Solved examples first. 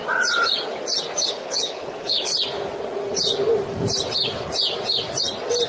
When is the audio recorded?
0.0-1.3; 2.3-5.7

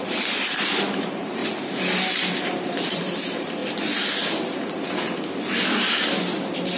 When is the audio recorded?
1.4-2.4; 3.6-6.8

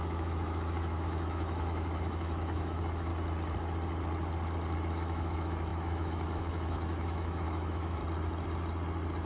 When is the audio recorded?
3.1-4.9; 8.0-9.3